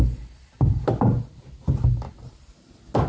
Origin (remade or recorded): recorded